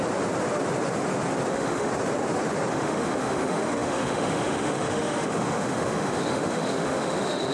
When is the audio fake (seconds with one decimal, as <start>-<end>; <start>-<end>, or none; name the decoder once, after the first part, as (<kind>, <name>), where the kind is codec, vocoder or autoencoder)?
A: 1.5-1.9 (autoencoder, DAC-VAE); 2.7-7.5